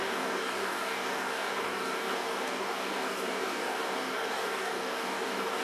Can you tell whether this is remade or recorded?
remade